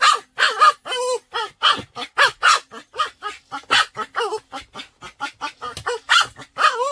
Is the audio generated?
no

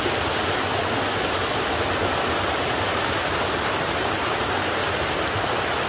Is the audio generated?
no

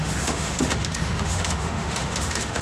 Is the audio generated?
yes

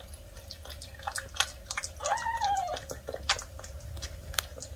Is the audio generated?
no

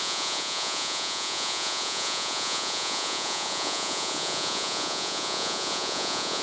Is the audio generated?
yes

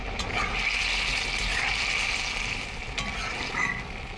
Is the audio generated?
no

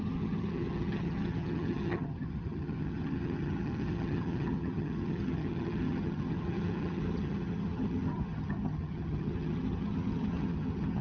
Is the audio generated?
yes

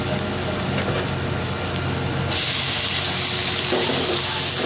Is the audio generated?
no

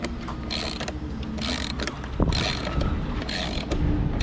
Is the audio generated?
no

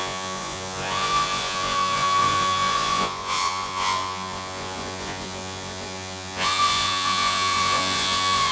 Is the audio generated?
yes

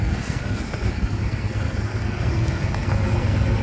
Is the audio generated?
yes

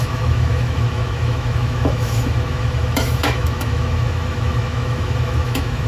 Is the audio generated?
yes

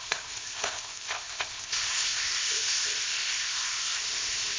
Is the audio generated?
yes